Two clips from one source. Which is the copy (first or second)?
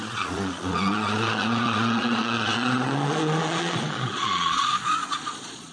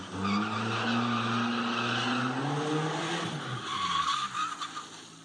first